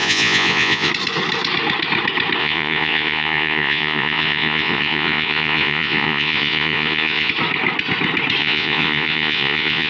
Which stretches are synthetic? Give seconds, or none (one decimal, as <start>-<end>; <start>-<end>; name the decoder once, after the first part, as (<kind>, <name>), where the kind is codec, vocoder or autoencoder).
0.0-0.9 (vocoder, Vocos); 2.4-7.3; 8.4-9.9